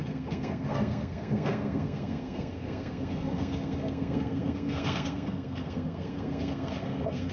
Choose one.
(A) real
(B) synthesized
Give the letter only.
B